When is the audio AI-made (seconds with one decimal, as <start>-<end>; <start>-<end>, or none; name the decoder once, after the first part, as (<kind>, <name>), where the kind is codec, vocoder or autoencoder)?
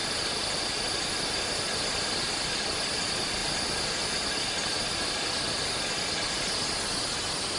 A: none